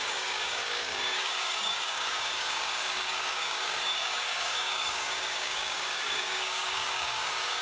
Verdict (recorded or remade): remade